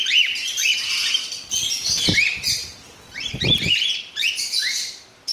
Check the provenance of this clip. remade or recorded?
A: recorded